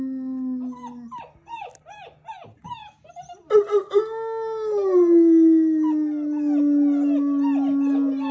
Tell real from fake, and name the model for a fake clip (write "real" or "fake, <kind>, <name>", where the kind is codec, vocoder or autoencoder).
real